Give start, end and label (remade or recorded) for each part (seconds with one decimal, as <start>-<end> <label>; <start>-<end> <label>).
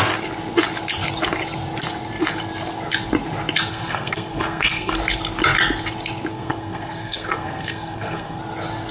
0.0-3.7 recorded; 3.7-5.0 remade; 5.0-6.3 recorded; 6.3-8.4 remade; 8.4-8.9 recorded